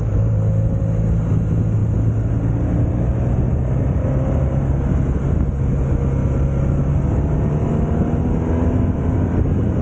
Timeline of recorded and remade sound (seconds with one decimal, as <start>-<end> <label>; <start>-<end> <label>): 0.0-9.8 recorded